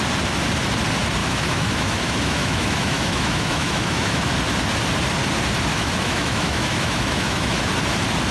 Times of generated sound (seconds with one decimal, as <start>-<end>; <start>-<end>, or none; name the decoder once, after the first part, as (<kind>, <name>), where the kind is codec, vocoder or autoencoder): 1.2-4.3 (autoencoder, DAC-VAE); 5.7-7.7